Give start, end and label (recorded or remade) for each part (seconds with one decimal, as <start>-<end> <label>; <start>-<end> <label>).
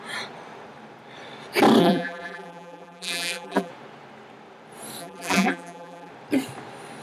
0.0-1.8 recorded; 1.8-3.7 remade; 3.7-5.0 recorded; 5.0-6.1 remade; 6.1-7.0 recorded